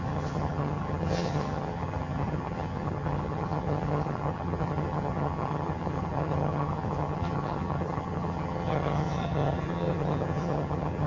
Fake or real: fake